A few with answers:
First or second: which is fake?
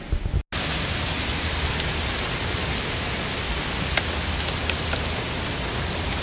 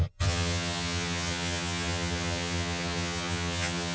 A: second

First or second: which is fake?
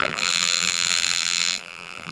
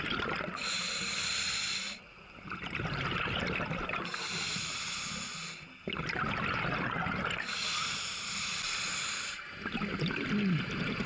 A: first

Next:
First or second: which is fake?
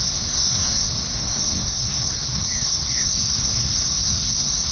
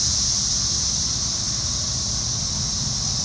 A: first